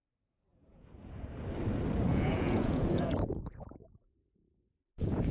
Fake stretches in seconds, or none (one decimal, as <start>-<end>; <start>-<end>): 0.0-1.3; 2.1-5.3

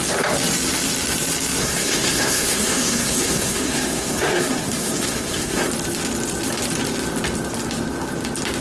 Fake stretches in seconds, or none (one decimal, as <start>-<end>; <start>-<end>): 1.6-5.7

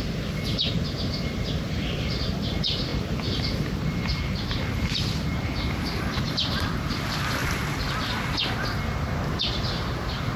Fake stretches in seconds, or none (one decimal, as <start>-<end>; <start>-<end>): 0.0-0.6; 1.1-7.4; 9.4-10.4

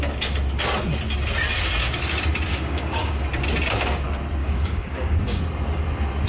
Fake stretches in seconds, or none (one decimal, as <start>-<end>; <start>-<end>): 2.5-3.1; 4.4-5.4

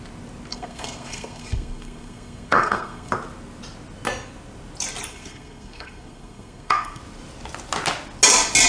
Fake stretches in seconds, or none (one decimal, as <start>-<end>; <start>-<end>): 0.5-3.1; 5.1-7.0